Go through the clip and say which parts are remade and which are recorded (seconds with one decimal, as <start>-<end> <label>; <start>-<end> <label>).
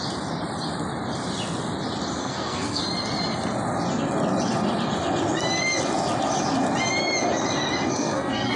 0.0-2.2 recorded; 2.2-2.8 remade; 2.8-7.9 recorded; 7.9-8.6 remade